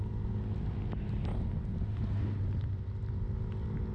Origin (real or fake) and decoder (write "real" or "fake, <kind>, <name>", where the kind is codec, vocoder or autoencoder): real